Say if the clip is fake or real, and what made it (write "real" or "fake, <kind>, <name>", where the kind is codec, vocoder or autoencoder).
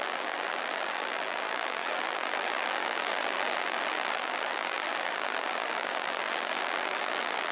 fake, vocoder, BigVGAN v2